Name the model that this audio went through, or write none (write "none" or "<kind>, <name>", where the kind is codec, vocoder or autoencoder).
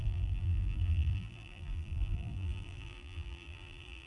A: vocoder, BigVGAN v2